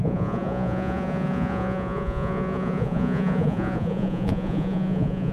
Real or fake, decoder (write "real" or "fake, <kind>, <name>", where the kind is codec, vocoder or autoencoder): fake, vocoder, Vocos